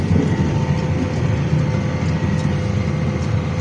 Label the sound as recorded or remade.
recorded